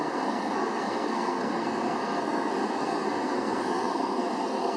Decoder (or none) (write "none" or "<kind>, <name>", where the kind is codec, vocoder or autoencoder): codec, SNAC